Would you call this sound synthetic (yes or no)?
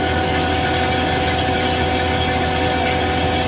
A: no